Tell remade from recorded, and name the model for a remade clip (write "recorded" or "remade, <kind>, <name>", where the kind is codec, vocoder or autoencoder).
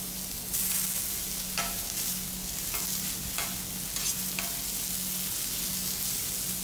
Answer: recorded